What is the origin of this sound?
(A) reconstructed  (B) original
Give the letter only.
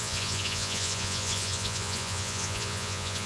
A